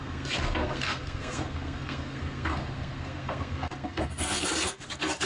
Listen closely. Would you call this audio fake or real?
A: fake